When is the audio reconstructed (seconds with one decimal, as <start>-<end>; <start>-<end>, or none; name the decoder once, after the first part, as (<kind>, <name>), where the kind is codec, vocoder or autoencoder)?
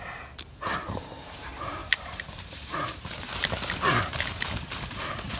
0.0-5.4 (vocoder, BigVGAN v2)